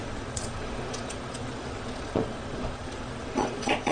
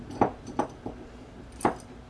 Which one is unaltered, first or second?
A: second